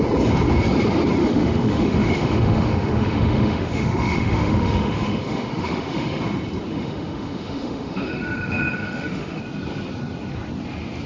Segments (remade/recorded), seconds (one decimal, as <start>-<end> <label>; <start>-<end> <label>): 0.0-1.2 recorded; 1.2-6.2 remade; 6.2-6.7 recorded; 6.7-9.4 remade; 9.4-11.1 recorded